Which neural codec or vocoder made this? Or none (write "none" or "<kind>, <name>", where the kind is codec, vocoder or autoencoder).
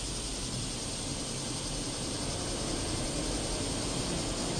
none